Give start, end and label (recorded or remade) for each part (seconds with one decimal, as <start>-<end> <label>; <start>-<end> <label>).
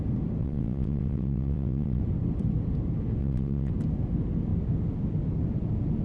0.0-0.4 recorded; 0.4-2.0 remade; 2.0-3.2 recorded; 3.2-3.7 remade; 3.7-6.0 recorded